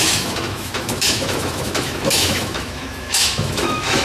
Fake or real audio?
fake